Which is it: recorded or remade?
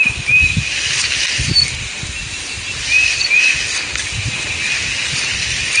recorded